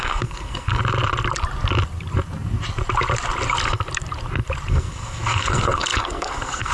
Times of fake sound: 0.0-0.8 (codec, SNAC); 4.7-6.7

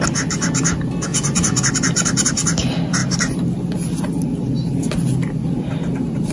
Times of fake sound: 1.1-1.7 (vocoder, Vocos)

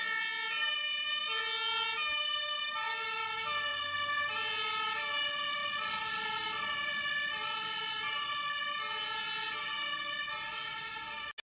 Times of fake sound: 0.6-1.2 (vocoder, BigVGAN v2); 5.6-8.6

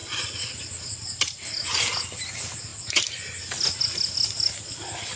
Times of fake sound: none

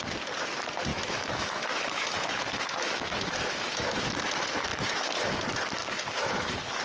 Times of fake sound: 0.9-4.1 (autoencoder, DAC-VAE); 4.7-5.3; 5.8-6.8

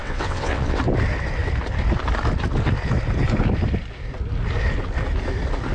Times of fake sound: 0.0-0.8 (vocoder, WaveNeXt)